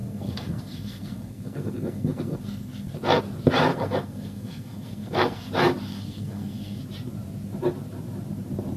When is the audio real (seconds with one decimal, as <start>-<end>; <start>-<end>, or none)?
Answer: 3.2-3.7; 5.5-5.9; 6.8-8.8